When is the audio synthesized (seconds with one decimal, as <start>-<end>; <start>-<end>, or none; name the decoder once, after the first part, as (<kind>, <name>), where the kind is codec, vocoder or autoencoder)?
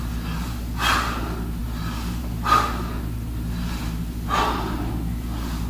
none